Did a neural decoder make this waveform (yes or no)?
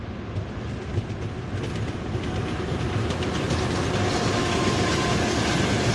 no